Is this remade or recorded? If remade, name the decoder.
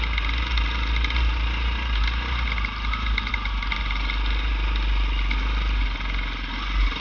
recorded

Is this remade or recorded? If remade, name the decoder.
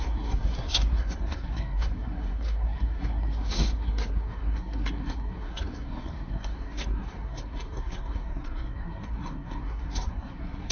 remade, codec, SNAC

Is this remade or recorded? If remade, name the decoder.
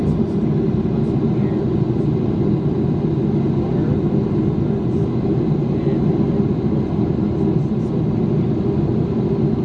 recorded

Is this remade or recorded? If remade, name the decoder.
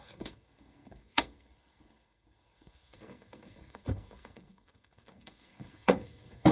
remade, codec, SNAC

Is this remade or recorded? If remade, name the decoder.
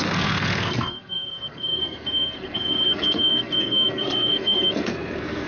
remade, codec, SNAC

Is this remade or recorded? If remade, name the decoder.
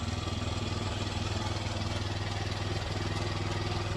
recorded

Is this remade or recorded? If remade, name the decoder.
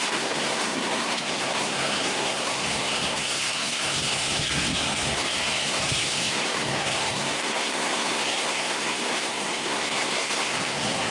remade, codec, SNAC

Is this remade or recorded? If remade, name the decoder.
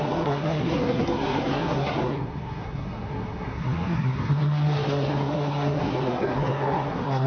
remade, codec, SNAC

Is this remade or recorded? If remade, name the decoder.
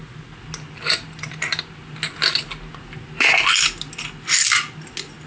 recorded